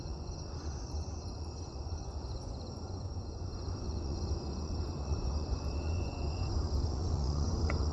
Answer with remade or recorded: remade